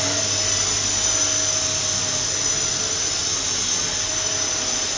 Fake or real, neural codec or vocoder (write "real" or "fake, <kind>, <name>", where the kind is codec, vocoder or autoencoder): real